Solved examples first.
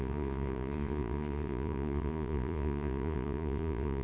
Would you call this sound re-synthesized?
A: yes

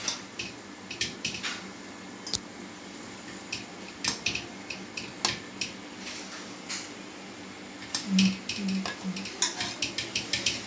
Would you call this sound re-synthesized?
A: no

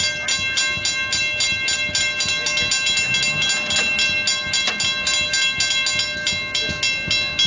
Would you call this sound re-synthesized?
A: no